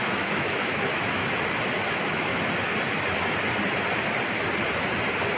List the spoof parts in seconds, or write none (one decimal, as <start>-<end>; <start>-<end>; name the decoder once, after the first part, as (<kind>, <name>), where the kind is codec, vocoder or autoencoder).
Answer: 0.0-1.2 (autoencoder, DAC-VAE); 1.9-2.3